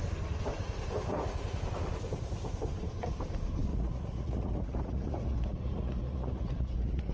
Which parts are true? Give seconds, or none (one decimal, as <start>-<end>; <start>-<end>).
0.0-3.7